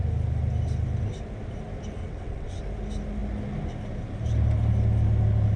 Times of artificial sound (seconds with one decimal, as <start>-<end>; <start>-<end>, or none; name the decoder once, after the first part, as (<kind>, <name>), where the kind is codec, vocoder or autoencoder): 2.0-2.6 (vocoder, WaveNeXt)